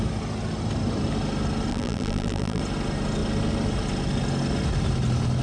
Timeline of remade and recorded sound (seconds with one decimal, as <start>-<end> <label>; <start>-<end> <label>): 0.0-1.7 recorded; 1.7-2.6 remade; 2.6-5.4 recorded